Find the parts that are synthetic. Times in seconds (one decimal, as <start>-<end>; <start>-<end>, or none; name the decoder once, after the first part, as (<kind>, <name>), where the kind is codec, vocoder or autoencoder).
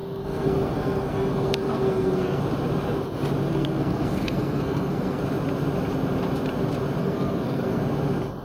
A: 0.0-2.4 (codec, SNAC); 3.5-5.2; 7.0-7.8